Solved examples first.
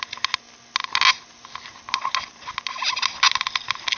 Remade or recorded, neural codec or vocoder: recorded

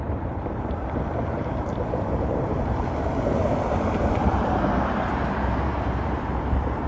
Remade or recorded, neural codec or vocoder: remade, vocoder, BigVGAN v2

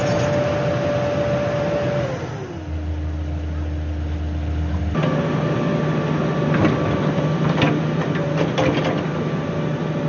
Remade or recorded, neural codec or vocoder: recorded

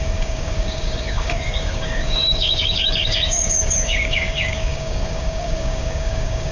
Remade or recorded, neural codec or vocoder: remade, codec, DAC